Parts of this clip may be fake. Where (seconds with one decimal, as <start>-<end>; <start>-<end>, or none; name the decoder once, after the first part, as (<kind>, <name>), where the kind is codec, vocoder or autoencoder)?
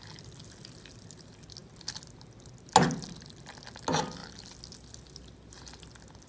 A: none